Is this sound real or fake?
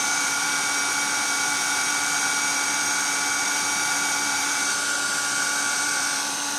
fake